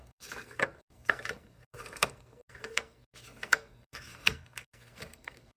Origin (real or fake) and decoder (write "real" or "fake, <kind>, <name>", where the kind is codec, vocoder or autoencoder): fake, codec, SNAC